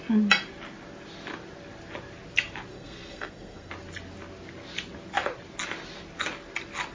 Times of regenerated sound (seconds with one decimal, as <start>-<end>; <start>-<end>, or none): 2.7-3.7